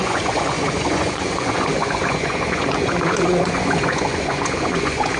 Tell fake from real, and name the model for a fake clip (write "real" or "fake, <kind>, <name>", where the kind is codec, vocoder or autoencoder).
fake, vocoder, Vocos